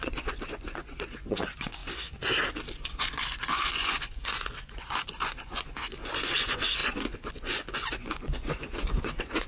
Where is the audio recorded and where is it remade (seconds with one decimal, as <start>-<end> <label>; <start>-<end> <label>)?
0.0-1.8 remade; 1.8-2.7 recorded; 2.7-9.5 remade